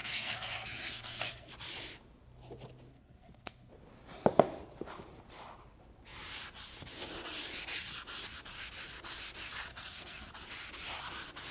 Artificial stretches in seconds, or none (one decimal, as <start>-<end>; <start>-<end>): 0.0-1.5; 2.9-3.7; 9.7-10.3